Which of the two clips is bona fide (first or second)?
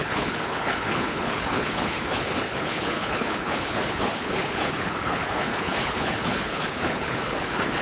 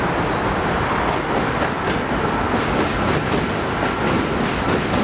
second